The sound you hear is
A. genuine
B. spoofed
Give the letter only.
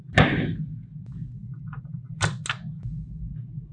A